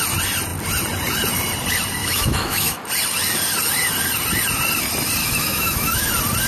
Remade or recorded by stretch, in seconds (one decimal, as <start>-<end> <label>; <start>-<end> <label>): 0.0-2.0 recorded; 2.0-2.8 remade; 2.8-5.2 recorded; 5.2-6.1 remade; 6.1-6.5 recorded